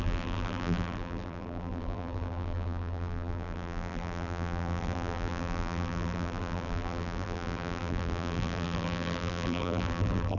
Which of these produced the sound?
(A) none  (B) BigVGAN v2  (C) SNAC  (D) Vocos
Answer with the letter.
B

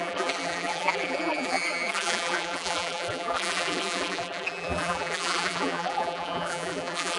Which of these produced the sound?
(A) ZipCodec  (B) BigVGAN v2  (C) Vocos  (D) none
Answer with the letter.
B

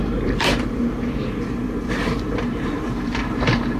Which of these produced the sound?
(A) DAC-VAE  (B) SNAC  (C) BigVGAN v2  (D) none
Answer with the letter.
C